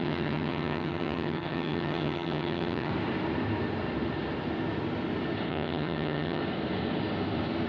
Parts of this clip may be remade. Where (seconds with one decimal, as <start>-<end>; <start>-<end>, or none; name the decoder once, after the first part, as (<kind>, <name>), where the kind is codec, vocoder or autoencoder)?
0.0-2.9 (vocoder, HiFi-GAN); 5.5-6.4